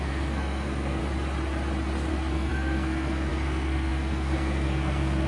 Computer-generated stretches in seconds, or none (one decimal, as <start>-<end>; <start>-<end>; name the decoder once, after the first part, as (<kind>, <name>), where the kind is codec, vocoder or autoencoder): 0.0-1.0 (codec, SNAC); 2.1-5.3